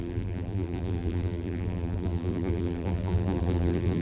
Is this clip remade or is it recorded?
remade